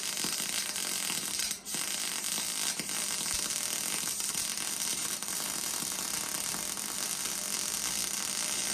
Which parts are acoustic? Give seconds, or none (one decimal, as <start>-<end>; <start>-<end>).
0.0-4.9; 6.2-8.7